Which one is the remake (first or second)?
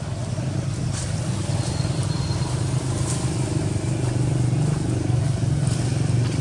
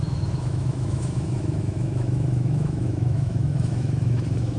second